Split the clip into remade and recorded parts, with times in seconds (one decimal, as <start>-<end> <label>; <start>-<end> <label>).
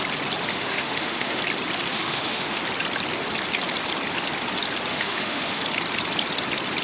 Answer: 0.0-0.5 recorded; 0.5-1.4 remade; 1.4-1.9 recorded; 1.9-2.6 remade; 2.6-4.9 recorded; 4.9-5.6 remade; 5.6-6.8 recorded